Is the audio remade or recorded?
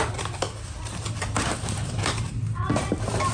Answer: recorded